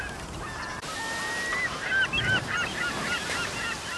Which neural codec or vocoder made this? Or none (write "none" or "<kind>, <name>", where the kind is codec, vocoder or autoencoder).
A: none